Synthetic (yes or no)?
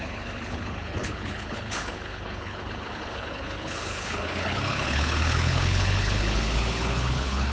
yes